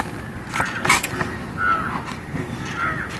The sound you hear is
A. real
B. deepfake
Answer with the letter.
A